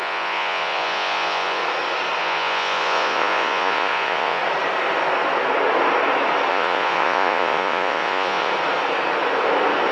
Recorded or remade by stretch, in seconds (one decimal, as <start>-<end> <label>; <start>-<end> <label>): 0.0-1.6 remade; 1.6-2.2 recorded; 2.2-4.4 remade; 4.4-6.5 recorded; 6.5-8.5 remade; 8.5-9.9 recorded